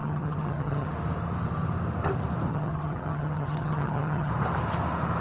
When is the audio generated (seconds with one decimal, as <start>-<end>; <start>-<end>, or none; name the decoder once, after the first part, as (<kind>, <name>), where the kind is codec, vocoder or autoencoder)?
0.0-0.9 (vocoder, HiFi-GAN); 2.5-4.3